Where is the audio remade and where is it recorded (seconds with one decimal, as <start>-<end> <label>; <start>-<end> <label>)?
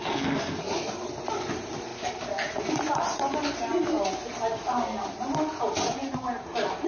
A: 0.0-0.6 remade; 0.6-6.9 recorded